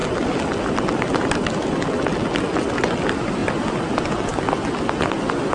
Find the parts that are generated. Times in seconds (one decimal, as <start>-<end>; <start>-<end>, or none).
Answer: none